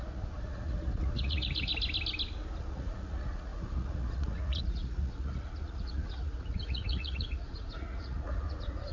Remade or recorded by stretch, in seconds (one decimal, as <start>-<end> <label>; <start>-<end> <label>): 0.0-1.7 remade; 1.7-2.6 recorded; 2.6-8.9 remade